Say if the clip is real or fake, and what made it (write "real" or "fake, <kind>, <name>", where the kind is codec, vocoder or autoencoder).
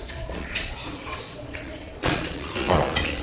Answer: fake, vocoder, Vocos